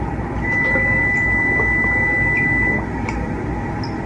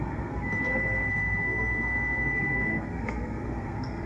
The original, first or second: first